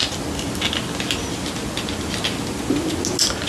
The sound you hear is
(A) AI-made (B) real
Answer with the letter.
B